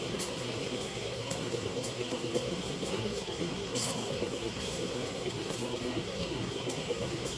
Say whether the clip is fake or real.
fake